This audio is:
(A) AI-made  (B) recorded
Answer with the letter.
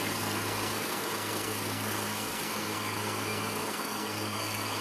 A